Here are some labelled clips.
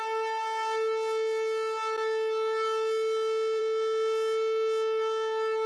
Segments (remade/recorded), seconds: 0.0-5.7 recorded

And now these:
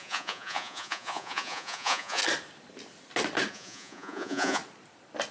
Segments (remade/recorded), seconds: 0.0-2.2 remade; 2.2-3.5 recorded; 3.5-4.6 remade; 4.6-5.3 recorded

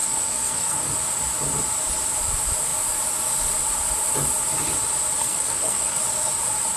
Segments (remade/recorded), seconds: 0.0-0.9 remade; 0.9-5.2 recorded; 5.2-6.0 remade; 6.0-6.8 recorded